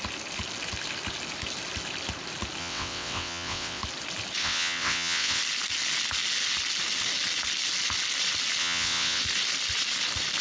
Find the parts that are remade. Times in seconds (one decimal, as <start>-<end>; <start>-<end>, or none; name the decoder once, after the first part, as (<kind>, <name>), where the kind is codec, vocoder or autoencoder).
2.6-3.8 (vocoder, WaveNeXt); 4.4-5.4; 8.6-9.2